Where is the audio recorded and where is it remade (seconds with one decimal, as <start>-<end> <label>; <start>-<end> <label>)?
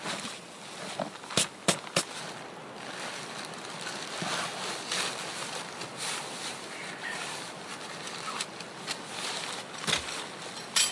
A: 0.0-10.9 recorded